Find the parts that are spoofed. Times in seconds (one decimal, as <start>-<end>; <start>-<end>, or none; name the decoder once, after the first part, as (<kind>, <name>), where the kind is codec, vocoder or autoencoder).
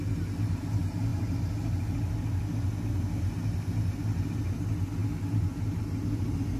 none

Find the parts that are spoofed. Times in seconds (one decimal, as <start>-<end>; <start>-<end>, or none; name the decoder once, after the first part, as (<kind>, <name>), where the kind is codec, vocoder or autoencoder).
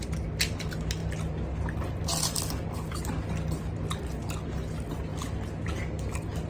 none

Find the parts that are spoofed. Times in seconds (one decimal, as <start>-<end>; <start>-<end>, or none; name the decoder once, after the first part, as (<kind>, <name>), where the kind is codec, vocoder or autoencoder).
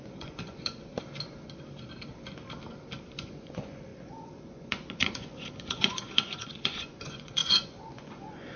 0.0-0.9 (vocoder, Vocos); 3.2-8.6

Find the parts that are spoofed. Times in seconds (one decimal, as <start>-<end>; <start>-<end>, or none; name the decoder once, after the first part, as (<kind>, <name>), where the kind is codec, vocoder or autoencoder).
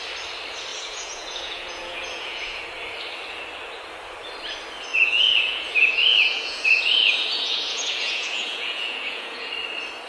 0.7-2.6 (vocoder, Vocos); 4.9-9.5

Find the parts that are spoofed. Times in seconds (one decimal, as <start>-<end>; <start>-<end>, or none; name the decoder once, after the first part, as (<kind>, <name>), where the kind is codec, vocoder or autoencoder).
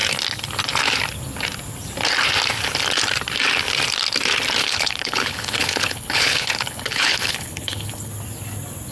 4.6-8.1 (codec, HILCodec)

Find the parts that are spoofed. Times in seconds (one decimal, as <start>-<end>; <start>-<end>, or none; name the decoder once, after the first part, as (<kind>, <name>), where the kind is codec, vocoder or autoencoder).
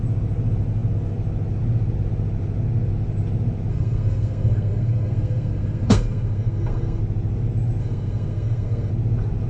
3.7-7.0 (codec, SNAC); 7.8-8.9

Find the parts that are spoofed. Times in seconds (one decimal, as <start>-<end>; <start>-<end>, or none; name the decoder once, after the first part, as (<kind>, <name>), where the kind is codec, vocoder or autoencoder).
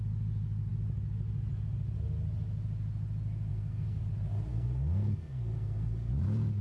3.5-4.0 (codec, SNAC); 4.5-6.1